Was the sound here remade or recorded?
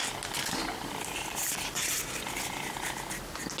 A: recorded